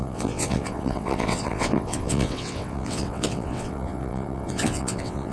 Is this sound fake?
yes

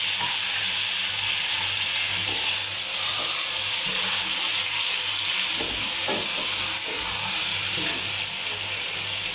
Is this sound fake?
no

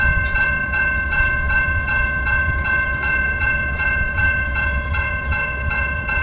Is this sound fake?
yes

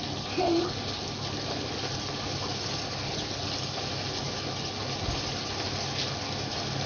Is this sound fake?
no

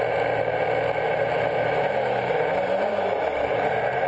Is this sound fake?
no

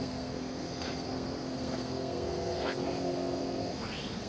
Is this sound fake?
yes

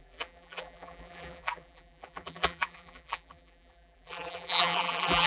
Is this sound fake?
yes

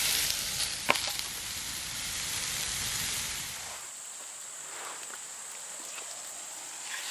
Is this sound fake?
yes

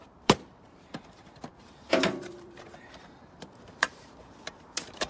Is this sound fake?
yes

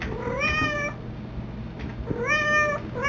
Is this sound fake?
no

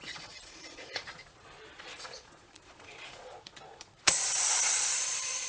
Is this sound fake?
yes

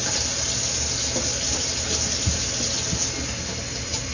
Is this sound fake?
no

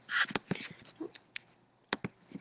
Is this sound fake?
no